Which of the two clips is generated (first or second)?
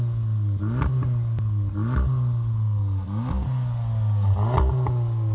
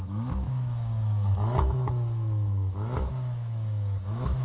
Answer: second